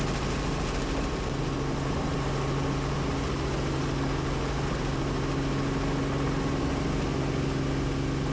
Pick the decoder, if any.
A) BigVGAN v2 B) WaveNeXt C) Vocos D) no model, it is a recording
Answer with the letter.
D